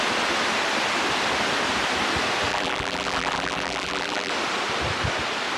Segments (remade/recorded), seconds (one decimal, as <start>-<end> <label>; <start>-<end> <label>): 0.0-2.5 recorded; 2.5-4.3 remade; 4.3-5.6 recorded